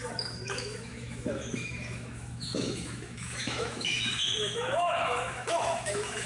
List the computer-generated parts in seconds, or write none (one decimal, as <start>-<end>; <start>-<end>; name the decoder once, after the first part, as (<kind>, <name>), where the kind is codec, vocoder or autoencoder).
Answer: 0.0-6.3 (autoencoder, DAC-VAE)